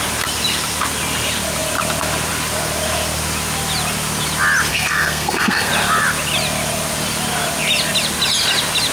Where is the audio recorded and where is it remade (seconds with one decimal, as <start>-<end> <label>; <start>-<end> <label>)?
0.0-4.7 recorded; 4.7-5.7 remade; 5.7-8.9 recorded